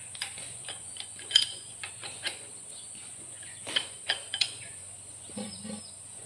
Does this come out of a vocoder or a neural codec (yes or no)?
yes